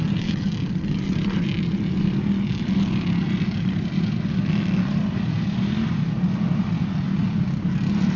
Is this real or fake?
real